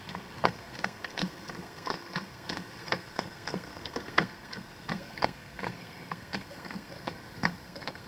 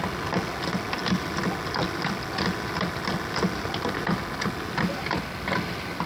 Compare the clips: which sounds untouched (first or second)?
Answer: second